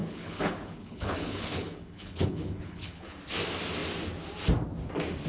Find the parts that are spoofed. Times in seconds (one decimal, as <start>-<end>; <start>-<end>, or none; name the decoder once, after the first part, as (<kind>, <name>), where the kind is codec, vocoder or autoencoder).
0.0-3.2 (codec, HILCodec)

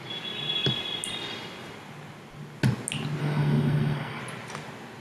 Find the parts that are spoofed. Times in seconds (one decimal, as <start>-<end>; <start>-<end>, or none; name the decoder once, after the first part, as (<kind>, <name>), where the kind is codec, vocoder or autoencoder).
3.2-4.2 (codec, SNAC)

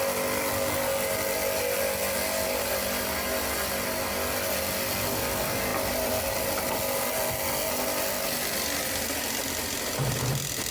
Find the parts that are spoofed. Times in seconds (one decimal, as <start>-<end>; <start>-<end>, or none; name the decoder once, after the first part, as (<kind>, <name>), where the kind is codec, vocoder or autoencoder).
none

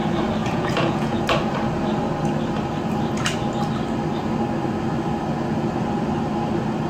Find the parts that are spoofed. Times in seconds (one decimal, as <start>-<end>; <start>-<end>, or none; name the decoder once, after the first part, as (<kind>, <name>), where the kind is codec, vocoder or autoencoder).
0.4-1.2 (vocoder, Vocos)

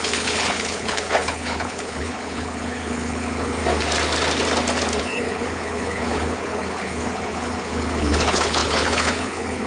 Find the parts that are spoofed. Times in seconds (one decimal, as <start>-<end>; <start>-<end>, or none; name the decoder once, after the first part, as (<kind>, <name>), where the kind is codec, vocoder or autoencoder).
0.0-3.6 (codec, HILCodec); 5.0-9.7